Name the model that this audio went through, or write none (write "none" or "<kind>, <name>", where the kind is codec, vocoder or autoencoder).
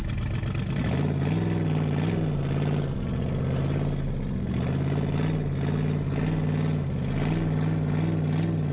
none